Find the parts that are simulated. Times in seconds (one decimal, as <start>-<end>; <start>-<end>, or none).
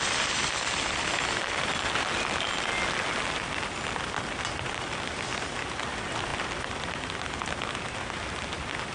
none